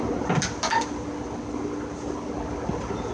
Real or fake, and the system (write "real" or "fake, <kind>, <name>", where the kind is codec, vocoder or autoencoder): real